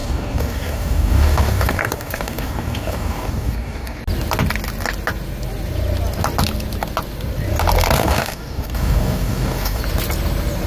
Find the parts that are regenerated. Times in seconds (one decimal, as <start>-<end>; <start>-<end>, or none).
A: 0.0-4.0; 8.0-9.8